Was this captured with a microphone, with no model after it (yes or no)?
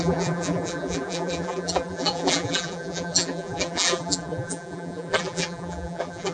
no